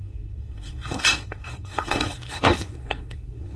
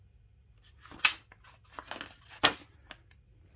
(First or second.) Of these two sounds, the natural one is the second